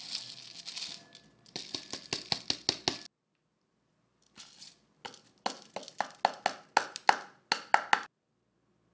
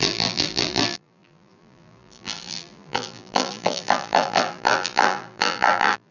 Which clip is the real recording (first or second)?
first